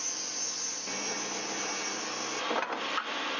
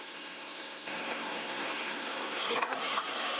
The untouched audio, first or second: first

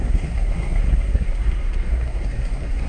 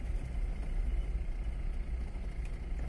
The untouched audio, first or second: second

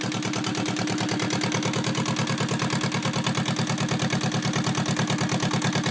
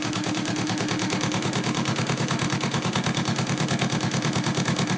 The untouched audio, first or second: first